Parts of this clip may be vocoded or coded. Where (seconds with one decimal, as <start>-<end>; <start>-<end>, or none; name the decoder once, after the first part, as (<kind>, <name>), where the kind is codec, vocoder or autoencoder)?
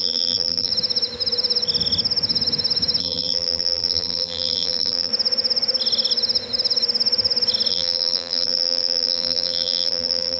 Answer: 0.0-0.7 (vocoder, BigVGAN v2); 3.0-5.1; 7.7-10.4